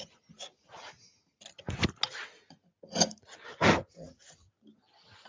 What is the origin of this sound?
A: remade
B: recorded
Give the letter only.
B